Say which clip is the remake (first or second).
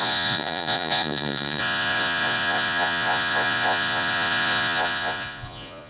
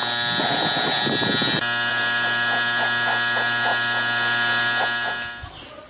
first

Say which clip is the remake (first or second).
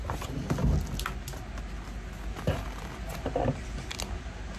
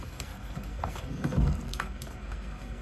second